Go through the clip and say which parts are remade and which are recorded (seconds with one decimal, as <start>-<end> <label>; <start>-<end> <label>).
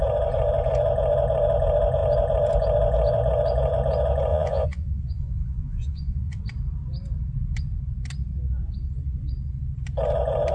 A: 0.0-4.3 recorded; 4.3-6.4 remade; 6.4-10.5 recorded